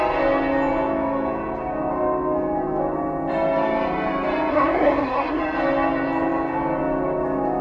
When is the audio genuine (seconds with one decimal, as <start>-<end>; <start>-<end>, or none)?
0.0-4.5; 5.4-7.6